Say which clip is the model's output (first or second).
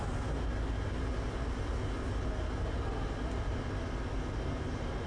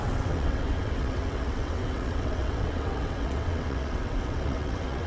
second